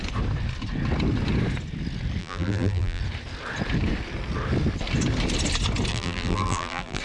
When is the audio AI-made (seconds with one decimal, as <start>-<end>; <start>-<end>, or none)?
2.2-3.0; 5.9-7.0